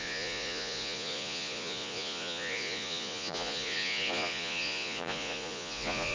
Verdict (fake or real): fake